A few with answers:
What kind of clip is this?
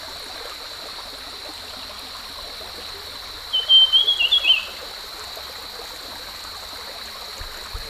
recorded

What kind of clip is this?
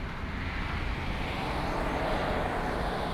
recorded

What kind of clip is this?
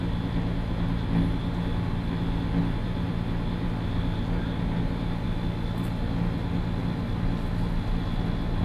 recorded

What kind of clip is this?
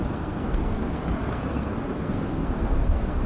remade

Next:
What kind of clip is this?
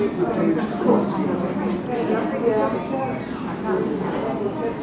recorded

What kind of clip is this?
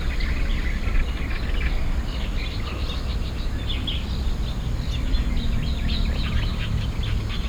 recorded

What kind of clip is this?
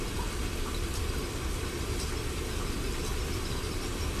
recorded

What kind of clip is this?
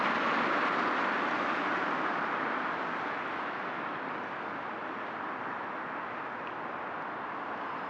recorded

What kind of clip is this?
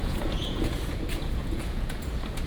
remade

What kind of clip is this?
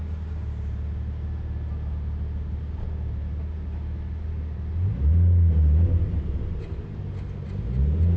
recorded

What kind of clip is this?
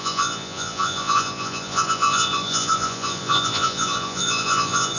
remade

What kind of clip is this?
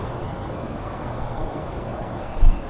remade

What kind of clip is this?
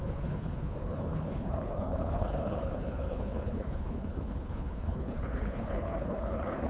remade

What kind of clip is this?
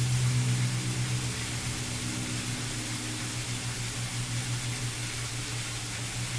recorded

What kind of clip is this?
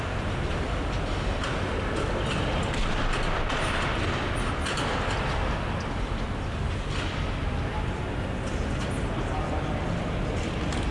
recorded